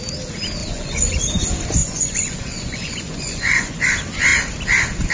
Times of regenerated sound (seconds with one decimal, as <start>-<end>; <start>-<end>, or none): 0.6-1.2; 1.8-3.8